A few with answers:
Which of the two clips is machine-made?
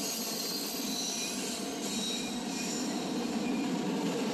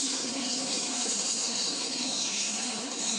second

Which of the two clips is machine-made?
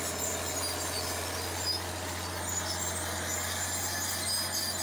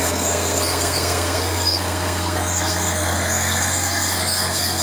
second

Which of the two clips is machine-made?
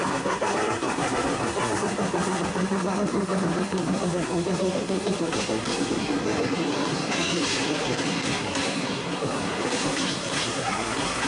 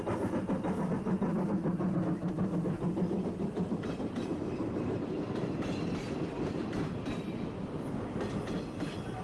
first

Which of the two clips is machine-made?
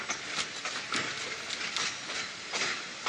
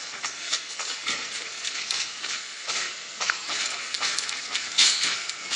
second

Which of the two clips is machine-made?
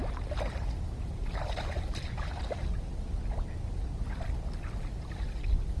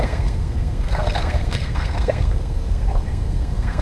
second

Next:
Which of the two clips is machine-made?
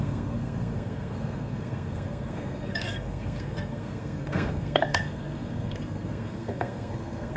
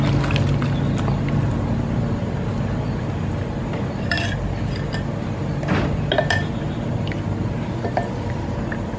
first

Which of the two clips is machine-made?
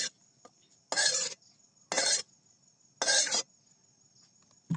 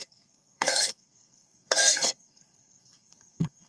second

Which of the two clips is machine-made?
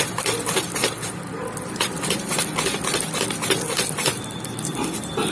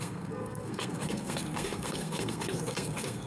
second